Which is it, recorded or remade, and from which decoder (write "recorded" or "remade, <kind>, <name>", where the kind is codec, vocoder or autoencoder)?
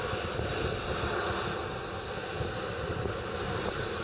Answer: recorded